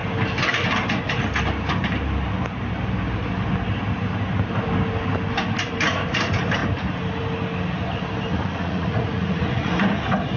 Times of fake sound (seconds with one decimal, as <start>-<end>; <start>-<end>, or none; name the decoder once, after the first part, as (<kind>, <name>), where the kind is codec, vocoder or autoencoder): 8.3-9.7 (vocoder, Vocos)